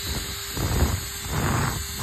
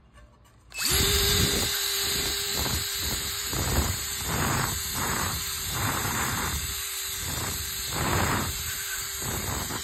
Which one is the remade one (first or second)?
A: second